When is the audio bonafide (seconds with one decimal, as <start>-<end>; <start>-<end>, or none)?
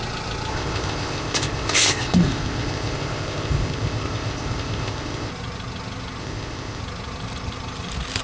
0.0-0.5; 5.3-6.2; 6.8-8.2